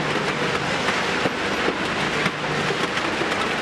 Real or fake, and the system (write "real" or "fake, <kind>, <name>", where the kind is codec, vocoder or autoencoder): real